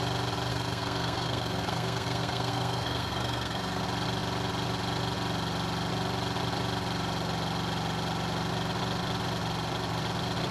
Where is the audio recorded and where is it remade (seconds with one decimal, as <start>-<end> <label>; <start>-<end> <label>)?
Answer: 0.0-0.5 recorded; 0.5-3.8 remade; 3.8-10.5 recorded